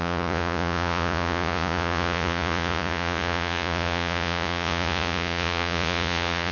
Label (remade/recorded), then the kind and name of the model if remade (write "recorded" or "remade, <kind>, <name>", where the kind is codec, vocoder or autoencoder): remade, vocoder, Vocos